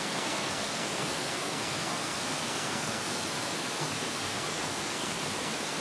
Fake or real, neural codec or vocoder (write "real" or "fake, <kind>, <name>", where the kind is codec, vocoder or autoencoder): fake, codec, SNAC